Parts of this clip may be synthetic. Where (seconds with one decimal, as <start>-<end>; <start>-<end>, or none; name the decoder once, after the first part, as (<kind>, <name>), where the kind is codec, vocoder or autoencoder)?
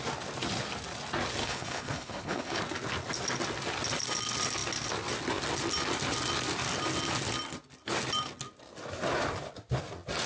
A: 1.4-2.6 (codec, HILCodec)